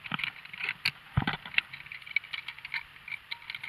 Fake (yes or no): no